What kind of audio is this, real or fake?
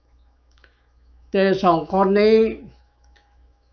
fake